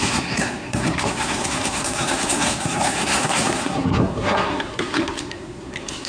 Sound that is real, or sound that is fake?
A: fake